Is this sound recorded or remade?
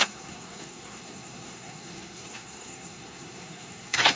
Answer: remade